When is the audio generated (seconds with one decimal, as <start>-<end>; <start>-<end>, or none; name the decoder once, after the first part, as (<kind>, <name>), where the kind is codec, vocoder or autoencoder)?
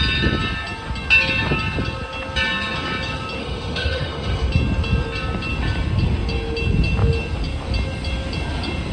3.4-4.5 (autoencoder, DAC-VAE)